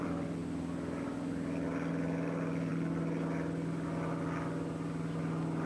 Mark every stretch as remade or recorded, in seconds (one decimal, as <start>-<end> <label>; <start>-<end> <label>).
0.0-0.4 remade; 0.4-1.9 recorded; 1.9-2.7 remade; 2.7-5.7 recorded